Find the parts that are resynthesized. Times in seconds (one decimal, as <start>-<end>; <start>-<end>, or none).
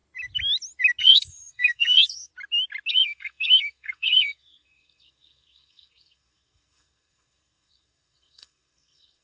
1.0-2.3; 2.9-9.2